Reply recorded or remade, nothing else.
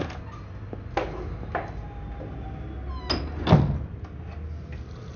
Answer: recorded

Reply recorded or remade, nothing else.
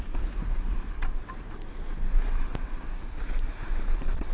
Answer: remade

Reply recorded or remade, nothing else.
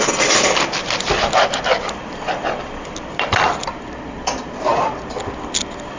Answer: recorded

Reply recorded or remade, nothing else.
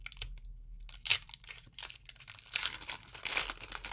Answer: recorded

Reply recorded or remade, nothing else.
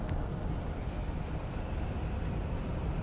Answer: recorded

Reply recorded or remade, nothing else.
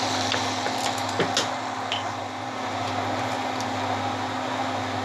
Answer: recorded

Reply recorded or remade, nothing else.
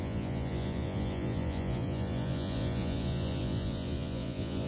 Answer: remade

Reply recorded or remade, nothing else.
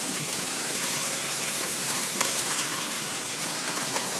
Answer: remade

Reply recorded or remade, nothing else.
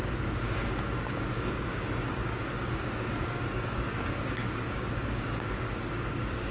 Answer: remade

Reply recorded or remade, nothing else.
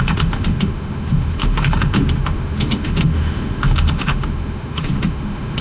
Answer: remade